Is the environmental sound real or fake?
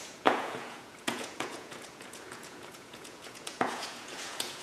fake